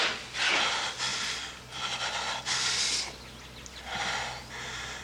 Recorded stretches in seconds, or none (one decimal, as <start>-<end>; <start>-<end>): 0.0-5.0